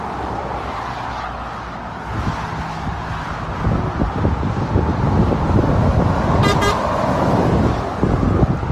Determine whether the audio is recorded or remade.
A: recorded